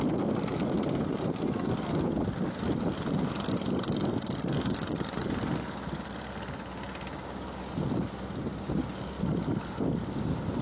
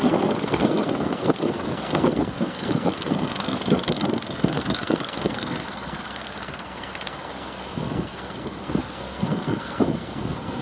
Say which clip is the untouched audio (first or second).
first